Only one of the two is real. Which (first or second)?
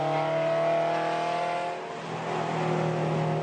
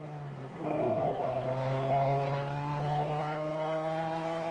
first